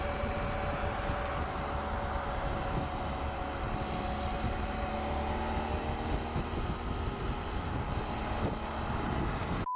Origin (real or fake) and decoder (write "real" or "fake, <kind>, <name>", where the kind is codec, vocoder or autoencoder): real